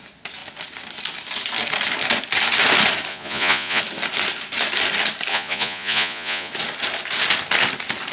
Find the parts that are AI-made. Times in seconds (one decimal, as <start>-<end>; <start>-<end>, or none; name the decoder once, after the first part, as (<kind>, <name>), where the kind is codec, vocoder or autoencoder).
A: 3.1-3.8 (vocoder, Vocos); 5.3-6.5